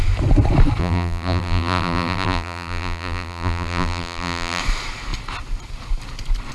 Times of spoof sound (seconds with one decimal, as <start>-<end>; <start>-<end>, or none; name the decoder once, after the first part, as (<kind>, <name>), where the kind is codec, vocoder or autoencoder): 0.8-4.6 (vocoder, BigVGAN v2)

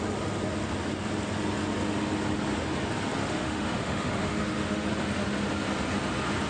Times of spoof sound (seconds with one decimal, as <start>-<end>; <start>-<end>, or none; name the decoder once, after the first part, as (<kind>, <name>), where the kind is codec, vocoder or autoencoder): 3.2-4.9 (autoencoder, DAC-VAE)

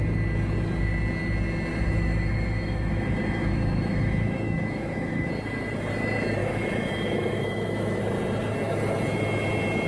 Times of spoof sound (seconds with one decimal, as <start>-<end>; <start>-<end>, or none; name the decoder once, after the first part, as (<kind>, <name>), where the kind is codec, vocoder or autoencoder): 1.7-5.3 (autoencoder, DAC-VAE); 6.4-8.0

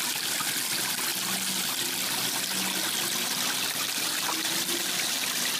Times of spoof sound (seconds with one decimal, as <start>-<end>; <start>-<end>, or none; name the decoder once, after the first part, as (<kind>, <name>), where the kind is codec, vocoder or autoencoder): none

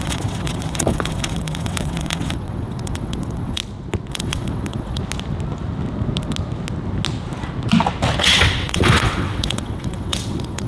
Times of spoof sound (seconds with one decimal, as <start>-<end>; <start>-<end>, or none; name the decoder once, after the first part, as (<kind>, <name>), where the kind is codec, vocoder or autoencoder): 0.0-3.6 (vocoder, WaveNeXt); 4.1-5.0; 8.2-10.7

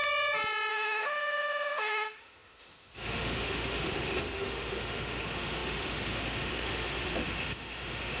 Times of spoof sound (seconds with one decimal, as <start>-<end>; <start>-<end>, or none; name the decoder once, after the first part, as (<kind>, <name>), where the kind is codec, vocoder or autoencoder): 0.7-8.2 (autoencoder, DAC-VAE)